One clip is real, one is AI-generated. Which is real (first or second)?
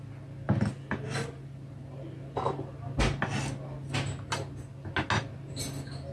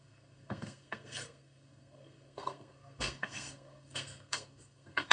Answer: first